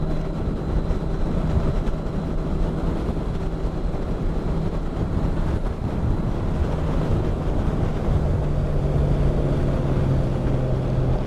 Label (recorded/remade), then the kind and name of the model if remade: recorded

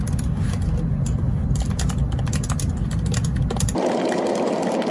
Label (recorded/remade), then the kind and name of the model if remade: recorded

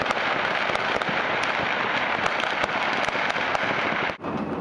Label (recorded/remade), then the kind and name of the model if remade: recorded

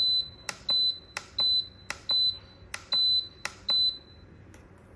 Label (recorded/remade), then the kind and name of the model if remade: recorded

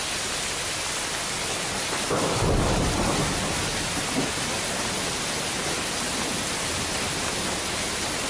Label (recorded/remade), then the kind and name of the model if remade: recorded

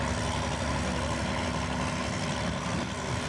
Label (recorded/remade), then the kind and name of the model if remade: recorded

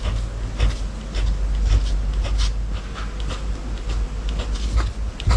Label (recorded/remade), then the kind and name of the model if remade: recorded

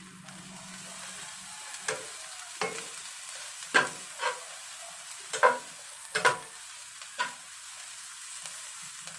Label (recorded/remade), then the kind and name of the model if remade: recorded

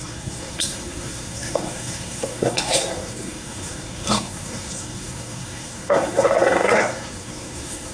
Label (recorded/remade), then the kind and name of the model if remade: remade, codec, SNAC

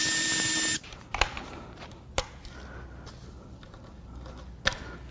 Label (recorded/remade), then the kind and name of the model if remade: recorded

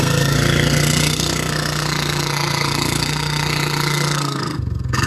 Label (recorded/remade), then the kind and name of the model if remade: remade, codec, SNAC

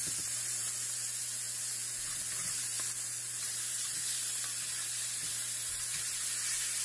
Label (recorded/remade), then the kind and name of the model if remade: recorded